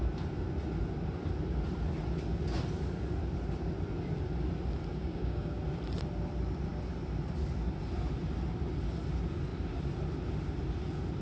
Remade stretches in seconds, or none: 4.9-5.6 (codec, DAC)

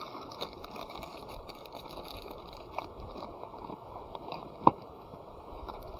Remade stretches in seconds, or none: 0.0-6.0 (codec, DAC)

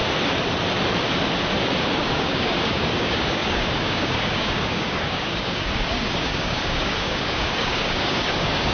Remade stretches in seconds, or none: 2.0-8.7 (codec, DAC)